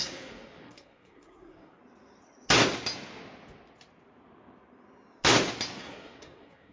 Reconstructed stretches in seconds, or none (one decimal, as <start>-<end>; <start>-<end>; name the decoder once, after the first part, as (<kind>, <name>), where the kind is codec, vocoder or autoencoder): 0.0-1.8 (codec, SNAC); 5.8-6.7